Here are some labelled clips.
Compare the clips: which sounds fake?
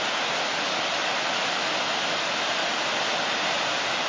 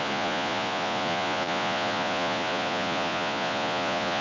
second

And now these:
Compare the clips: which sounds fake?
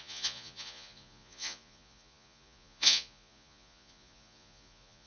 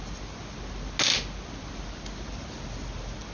first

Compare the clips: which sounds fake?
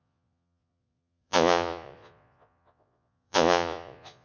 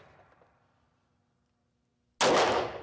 first